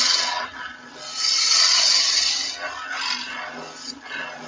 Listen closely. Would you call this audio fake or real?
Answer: real